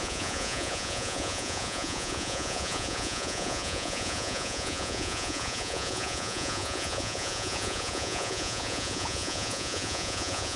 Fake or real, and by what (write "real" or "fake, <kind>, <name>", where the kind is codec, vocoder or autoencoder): fake, vocoder, Vocos